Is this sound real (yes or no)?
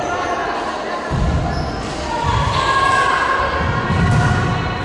yes